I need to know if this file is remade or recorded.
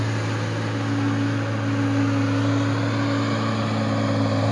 recorded